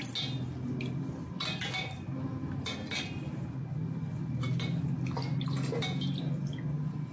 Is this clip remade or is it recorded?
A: recorded